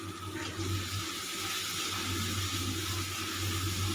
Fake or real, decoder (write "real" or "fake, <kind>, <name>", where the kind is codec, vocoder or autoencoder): real